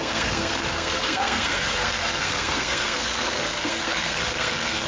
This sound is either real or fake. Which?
fake